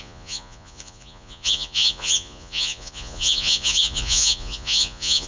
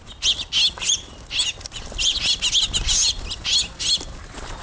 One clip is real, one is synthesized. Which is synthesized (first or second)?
first